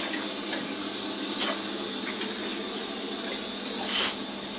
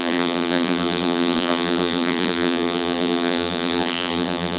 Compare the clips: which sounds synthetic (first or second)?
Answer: second